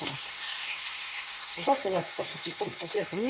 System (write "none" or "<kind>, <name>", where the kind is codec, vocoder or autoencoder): codec, SNAC